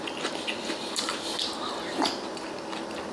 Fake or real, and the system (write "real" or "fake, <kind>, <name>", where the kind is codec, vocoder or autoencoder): real